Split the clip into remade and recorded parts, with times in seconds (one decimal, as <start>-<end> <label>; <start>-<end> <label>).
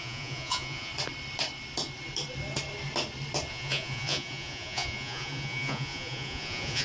0.0-0.9 remade; 0.9-3.5 recorded; 3.5-6.8 remade